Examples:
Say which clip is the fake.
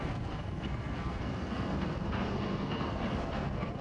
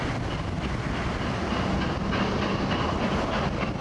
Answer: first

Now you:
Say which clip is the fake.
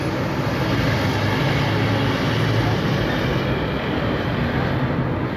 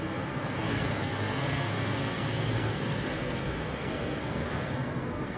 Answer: second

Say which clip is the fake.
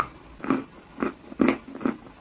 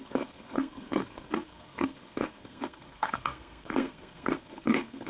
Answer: second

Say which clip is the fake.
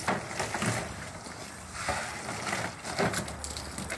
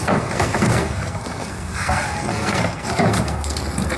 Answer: second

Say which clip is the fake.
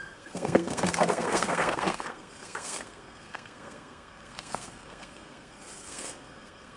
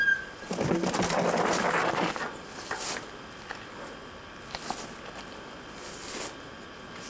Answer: first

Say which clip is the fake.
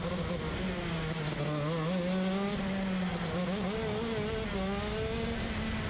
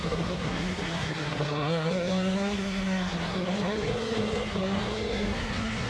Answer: second